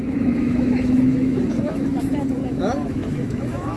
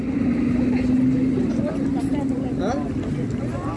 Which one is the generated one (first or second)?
first